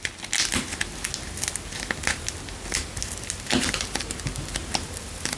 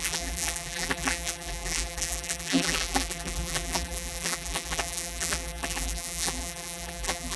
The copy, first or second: second